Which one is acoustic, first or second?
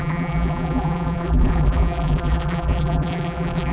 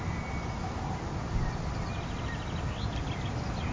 second